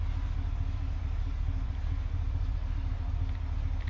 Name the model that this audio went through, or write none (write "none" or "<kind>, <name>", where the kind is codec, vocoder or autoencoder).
none